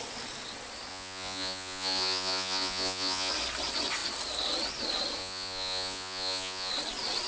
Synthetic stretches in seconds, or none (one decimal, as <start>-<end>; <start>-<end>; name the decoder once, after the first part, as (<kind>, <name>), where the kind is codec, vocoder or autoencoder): 0.9-3.3 (vocoder, Vocos); 5.2-6.7